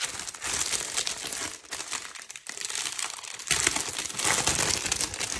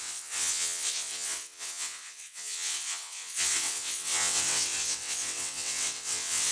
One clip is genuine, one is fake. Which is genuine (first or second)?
first